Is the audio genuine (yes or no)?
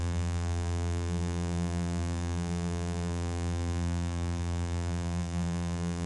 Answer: no